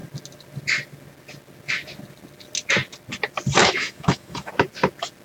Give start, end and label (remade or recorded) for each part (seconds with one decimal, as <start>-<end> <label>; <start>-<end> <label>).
0.0-3.6 recorded; 3.6-4.5 remade; 4.5-5.2 recorded